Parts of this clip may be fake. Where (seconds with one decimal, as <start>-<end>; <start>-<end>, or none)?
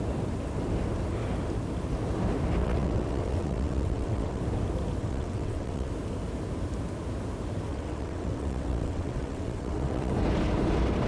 2.6-4.4; 5.0-5.9; 7.7-10.1